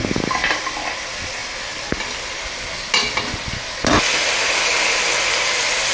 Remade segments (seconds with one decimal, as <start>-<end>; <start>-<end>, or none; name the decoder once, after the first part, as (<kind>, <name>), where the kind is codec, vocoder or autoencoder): none